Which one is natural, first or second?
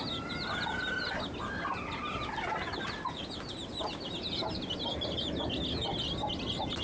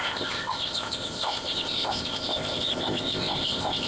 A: first